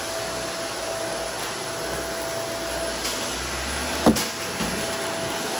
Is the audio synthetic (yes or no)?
no